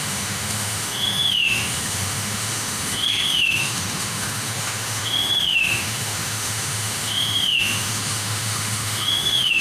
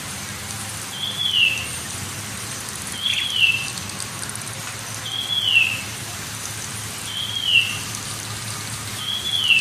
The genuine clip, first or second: second